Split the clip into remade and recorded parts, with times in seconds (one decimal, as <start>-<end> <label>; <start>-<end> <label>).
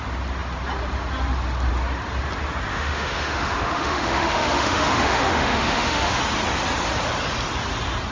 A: 0.0-2.7 recorded; 2.7-6.2 remade; 6.2-8.1 recorded